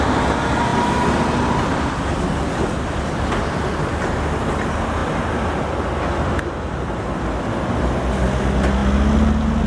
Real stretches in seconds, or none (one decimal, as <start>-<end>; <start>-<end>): 0.0-9.7